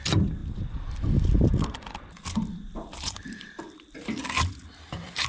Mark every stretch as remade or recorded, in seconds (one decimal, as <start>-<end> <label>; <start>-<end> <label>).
0.0-5.3 recorded